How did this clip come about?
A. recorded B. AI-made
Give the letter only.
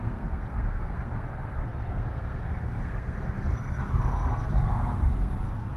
B